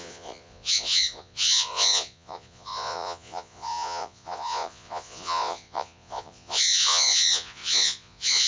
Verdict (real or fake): fake